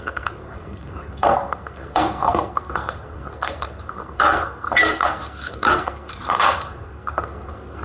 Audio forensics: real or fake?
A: fake